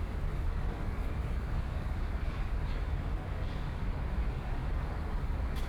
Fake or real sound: fake